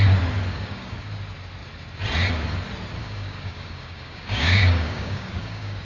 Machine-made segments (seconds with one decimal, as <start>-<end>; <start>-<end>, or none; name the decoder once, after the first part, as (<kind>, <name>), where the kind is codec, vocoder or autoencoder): 0.5-1.0 (codec, DAC); 3.0-5.8